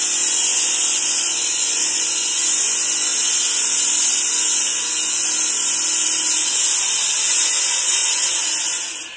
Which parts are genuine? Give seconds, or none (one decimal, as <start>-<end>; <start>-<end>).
3.1-7.3; 8.0-9.2

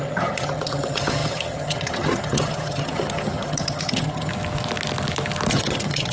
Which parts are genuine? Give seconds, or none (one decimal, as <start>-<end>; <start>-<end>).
4.3-5.5